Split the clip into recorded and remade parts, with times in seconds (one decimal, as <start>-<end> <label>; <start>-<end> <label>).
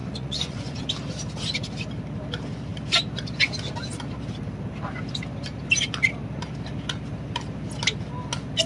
0.0-0.8 remade; 0.8-8.7 recorded